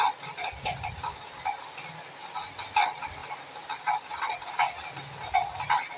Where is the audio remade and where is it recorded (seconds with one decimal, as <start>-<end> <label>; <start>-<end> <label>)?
0.0-6.0 recorded